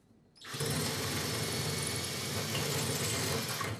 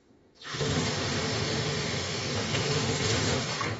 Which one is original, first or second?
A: first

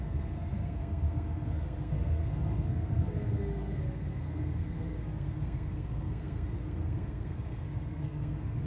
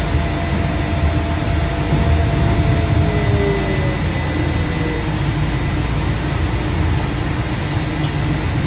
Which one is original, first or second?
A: second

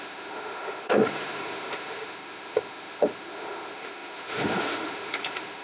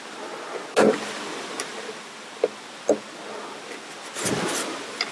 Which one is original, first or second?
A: second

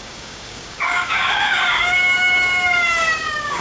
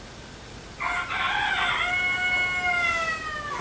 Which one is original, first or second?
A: second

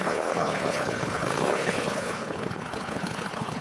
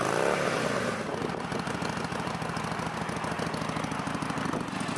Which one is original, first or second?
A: second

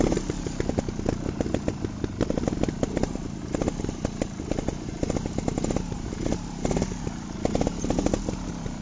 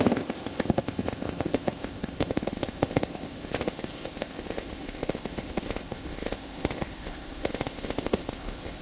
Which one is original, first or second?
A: first